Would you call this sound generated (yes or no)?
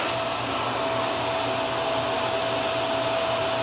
no